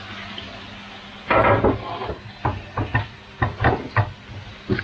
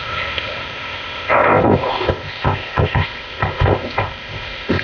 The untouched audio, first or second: first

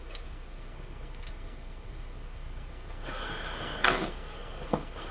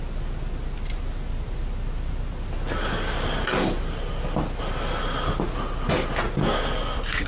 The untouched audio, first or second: second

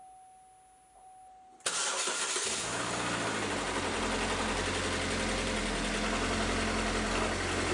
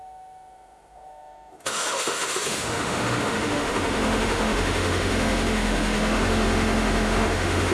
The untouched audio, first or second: first